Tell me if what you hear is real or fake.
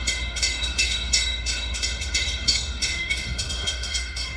fake